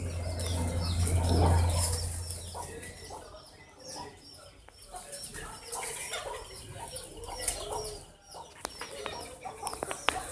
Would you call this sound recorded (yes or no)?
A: yes